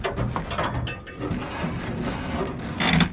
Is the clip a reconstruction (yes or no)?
no